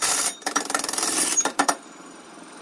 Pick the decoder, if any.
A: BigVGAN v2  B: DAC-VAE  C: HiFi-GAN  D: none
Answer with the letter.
A